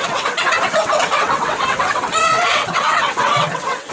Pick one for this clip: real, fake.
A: fake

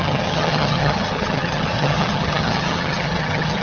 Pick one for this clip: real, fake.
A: fake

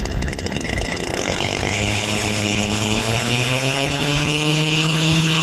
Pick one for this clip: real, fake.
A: fake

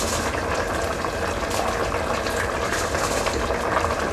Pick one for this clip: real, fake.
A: real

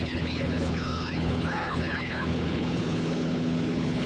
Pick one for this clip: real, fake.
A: fake